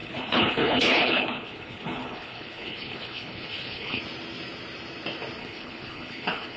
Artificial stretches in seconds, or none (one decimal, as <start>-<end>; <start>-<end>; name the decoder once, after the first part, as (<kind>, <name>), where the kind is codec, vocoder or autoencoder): 0.0-4.0 (codec, HILCodec); 5.4-6.6